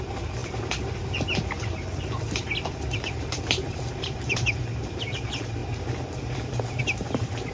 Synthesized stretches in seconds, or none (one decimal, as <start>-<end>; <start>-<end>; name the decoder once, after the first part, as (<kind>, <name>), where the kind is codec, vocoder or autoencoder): 0.0-0.4 (vocoder, BigVGAN v2); 2.7-5.6; 6.8-7.5